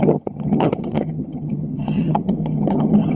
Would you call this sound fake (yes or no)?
yes